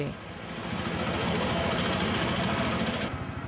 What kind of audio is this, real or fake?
real